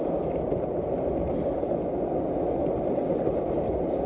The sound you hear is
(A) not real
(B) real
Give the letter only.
B